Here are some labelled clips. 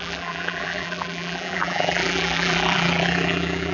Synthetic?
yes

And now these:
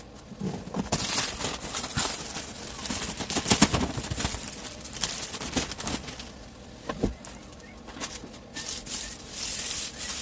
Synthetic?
no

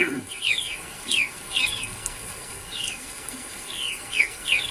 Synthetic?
yes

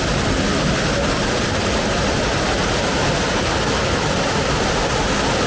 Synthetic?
no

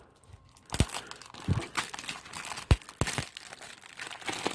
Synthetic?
no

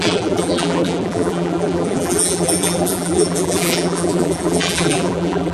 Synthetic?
yes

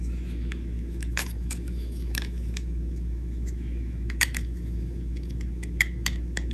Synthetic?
yes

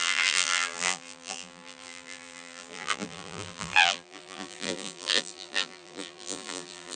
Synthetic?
yes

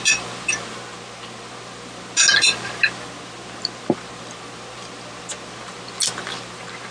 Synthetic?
no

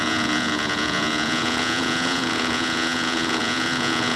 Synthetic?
yes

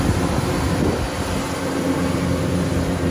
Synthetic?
no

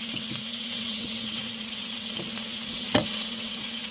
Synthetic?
yes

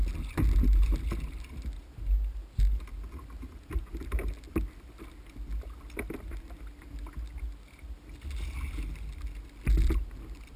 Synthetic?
no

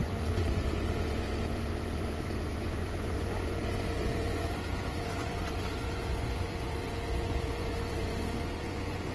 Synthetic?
yes